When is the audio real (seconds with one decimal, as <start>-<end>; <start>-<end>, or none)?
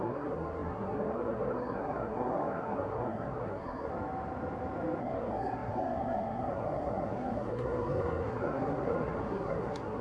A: 3.9-5.0